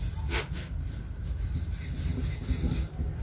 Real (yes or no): yes